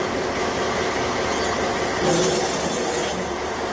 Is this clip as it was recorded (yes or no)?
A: yes